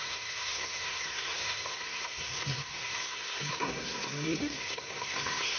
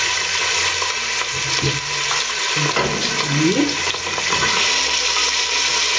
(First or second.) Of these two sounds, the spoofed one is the first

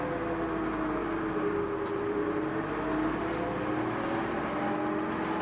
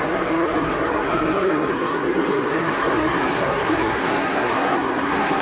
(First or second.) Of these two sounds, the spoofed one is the second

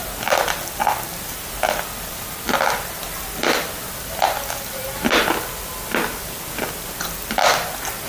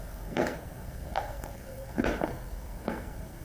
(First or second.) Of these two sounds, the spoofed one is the second